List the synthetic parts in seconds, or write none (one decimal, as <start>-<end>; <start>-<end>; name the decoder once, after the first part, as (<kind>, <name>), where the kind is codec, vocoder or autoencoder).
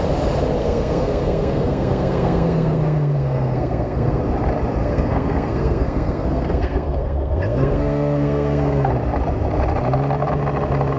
0.6-4.2 (codec, SNAC); 4.8-8.9